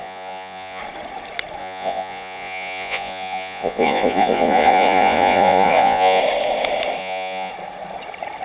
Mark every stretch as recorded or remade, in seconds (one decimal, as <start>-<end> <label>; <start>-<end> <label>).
0.0-0.8 remade; 0.8-1.6 recorded; 1.6-6.2 remade; 6.2-7.0 recorded; 7.0-7.5 remade; 7.5-8.4 recorded